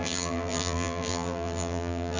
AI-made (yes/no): yes